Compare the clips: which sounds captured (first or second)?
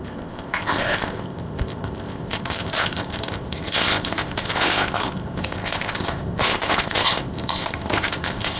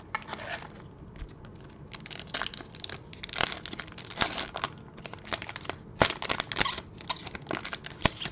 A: second